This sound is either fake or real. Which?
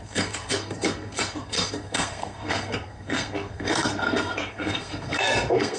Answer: fake